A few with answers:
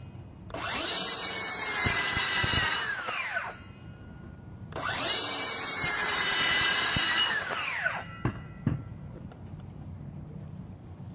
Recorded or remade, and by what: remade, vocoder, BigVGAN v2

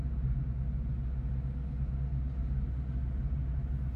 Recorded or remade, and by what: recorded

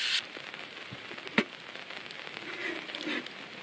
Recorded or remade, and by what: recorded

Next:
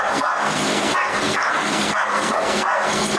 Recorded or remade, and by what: remade, codec, SNAC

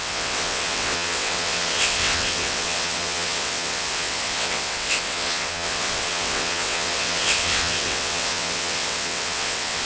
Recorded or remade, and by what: remade, vocoder, WaveNeXt